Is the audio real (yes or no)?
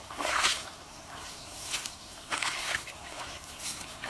no